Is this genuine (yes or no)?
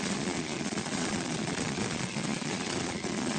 no